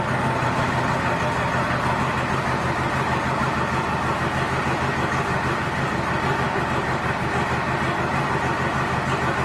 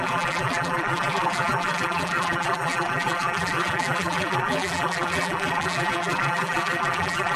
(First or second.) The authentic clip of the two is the first